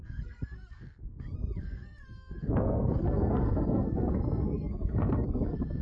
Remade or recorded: remade